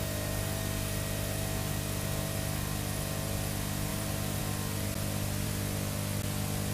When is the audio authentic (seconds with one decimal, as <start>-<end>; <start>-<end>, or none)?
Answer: 0.0-3.9; 4.4-6.7